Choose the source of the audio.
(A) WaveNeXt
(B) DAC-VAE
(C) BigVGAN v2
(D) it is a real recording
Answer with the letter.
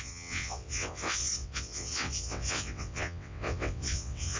A